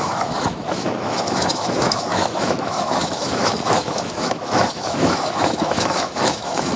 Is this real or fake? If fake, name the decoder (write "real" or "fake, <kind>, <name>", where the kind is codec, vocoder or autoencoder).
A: fake, autoencoder, DAC-VAE